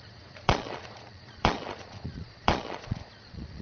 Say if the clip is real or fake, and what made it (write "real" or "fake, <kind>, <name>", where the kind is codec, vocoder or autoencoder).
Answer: fake, vocoder, Vocos